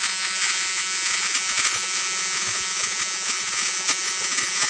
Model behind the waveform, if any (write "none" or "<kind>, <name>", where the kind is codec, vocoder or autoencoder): vocoder, Vocos